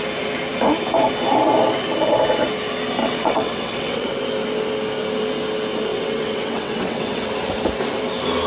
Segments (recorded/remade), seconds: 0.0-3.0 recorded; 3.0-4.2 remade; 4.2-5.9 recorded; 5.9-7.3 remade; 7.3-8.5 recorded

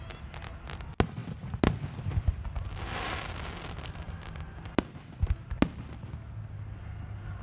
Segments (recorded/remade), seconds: 0.0-7.4 recorded

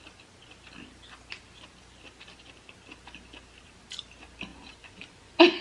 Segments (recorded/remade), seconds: 0.0-4.5 recorded; 4.5-5.6 remade

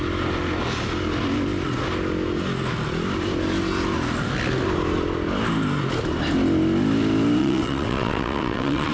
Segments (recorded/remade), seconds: 0.0-7.4 recorded; 7.4-8.9 remade

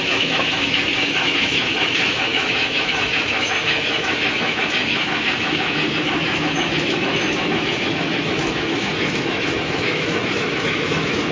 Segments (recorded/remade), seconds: 0.0-11.3 remade